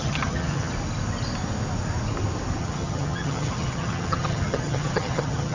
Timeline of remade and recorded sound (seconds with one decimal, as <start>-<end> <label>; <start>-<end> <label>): 0.0-0.7 remade; 0.7-2.6 recorded; 2.6-5.5 remade